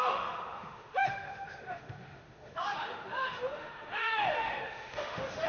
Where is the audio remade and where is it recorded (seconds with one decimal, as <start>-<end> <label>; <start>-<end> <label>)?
0.0-5.5 remade